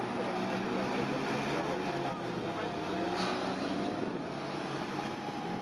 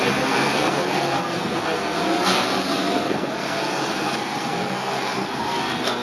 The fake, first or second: second